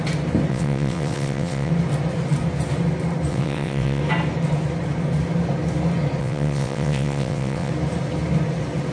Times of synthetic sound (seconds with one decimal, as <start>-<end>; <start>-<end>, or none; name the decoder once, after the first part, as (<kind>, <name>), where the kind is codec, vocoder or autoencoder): 0.5-1.7 (vocoder, WaveNeXt); 3.3-4.0; 6.2-7.7